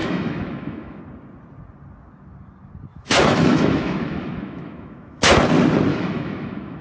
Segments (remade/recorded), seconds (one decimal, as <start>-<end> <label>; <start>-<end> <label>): 0.0-1.0 remade; 1.0-2.9 recorded; 2.9-5.2 remade; 5.2-5.9 recorded; 5.9-6.8 remade